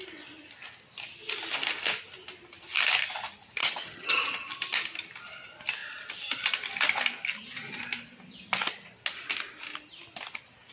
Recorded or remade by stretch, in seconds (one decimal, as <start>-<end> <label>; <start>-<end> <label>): 0.0-3.6 recorded; 3.6-4.2 remade; 4.2-10.7 recorded